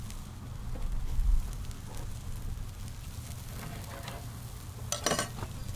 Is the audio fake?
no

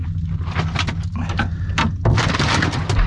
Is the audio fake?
no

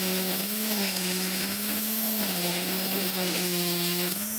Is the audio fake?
yes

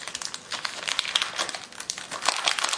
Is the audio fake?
no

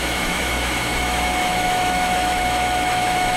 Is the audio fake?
yes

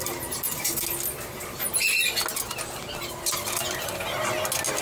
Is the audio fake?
no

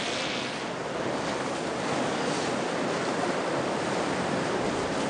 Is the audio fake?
no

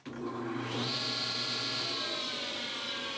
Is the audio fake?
no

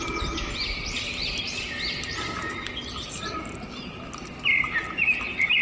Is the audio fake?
no